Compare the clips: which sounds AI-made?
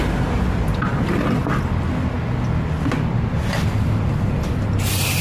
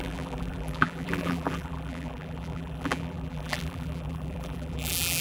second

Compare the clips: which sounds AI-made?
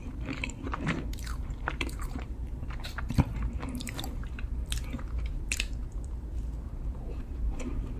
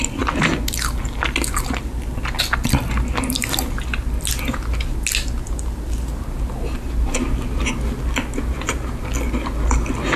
first